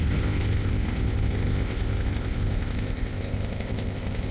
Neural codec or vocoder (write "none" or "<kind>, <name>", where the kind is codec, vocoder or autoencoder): codec, ZipCodec